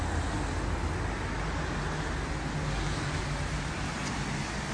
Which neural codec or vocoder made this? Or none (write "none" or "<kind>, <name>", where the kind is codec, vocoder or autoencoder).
none